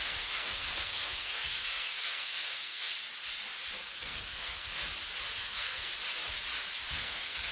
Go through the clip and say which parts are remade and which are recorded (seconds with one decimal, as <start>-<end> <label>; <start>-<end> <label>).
0.0-2.9 remade; 2.9-3.8 recorded; 3.8-4.8 remade; 4.8-5.4 recorded; 5.4-5.9 remade; 5.9-6.9 recorded; 6.9-7.5 remade